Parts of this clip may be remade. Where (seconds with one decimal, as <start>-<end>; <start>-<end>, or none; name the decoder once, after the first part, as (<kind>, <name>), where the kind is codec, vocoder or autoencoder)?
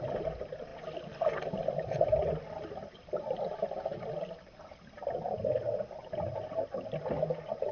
none